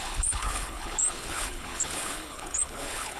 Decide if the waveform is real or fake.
fake